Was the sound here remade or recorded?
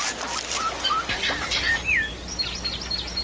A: recorded